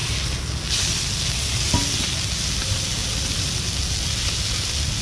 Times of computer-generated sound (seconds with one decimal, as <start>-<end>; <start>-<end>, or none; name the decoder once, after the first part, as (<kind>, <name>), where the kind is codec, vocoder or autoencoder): none